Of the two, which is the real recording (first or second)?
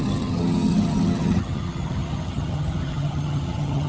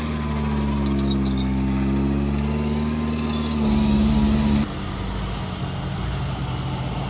second